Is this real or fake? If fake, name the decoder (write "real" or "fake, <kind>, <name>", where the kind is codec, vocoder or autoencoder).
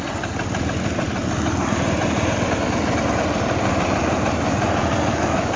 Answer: real